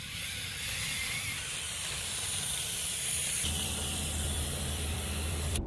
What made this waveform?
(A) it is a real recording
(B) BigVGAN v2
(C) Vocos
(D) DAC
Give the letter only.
B